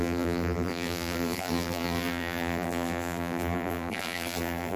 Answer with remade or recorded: remade